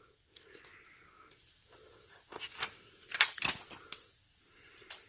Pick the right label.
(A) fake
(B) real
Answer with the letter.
B